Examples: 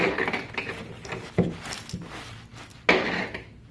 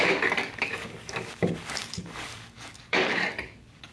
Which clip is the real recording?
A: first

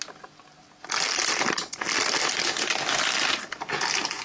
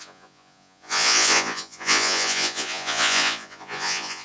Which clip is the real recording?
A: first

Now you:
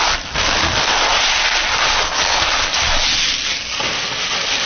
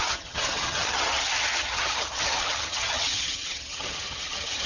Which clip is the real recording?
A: first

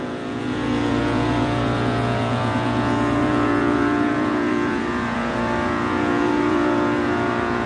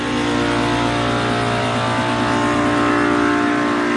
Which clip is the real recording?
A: second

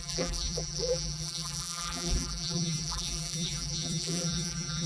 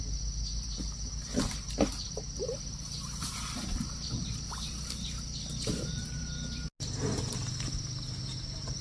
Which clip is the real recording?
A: second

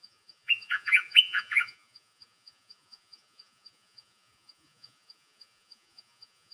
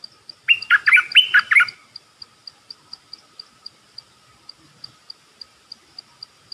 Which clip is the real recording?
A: second